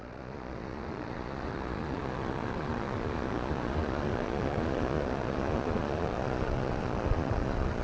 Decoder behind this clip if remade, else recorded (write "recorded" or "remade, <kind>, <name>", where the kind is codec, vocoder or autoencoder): remade, vocoder, Vocos